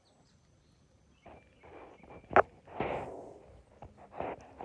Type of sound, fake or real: real